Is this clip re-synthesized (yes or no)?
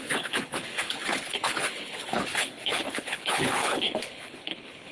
yes